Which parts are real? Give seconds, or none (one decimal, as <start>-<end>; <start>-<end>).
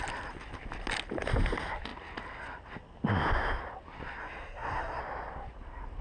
0.0-4.2; 5.0-6.0